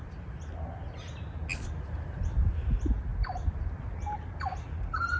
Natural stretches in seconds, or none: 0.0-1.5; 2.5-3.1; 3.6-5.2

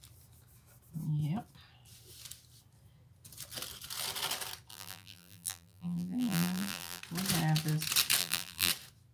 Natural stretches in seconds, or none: 0.0-4.7; 7.0-8.2; 8.7-9.1

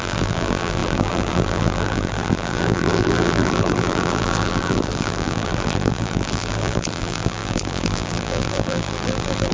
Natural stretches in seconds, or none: none